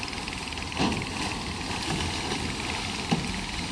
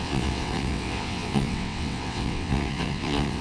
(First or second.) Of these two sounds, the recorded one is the first